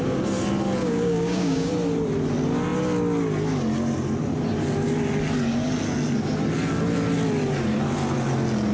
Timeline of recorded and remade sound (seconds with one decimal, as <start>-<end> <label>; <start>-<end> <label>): 0.0-0.8 recorded; 0.8-1.7 remade; 1.7-8.7 recorded